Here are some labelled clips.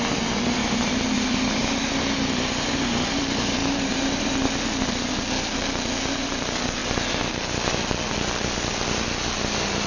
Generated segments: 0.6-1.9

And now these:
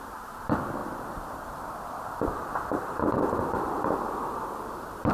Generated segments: 0.8-3.1

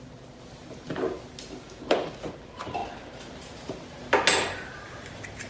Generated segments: none

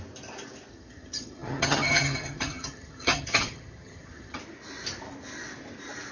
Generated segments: 0.7-4.4

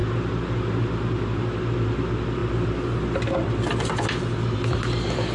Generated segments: none